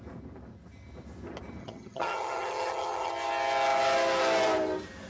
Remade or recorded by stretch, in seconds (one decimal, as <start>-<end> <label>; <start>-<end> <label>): 0.0-1.6 recorded; 1.6-3.1 remade; 3.1-5.1 recorded